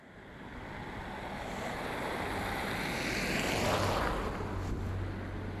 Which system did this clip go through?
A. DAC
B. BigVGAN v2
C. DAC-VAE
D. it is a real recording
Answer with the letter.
D